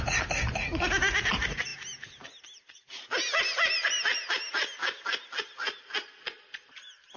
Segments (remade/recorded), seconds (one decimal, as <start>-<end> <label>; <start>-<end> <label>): 0.0-7.2 recorded